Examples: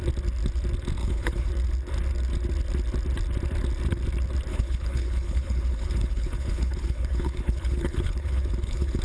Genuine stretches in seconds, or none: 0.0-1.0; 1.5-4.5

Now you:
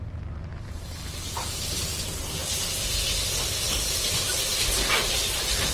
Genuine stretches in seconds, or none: 2.4-4.6

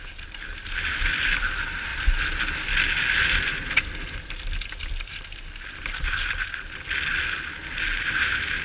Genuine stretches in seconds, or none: none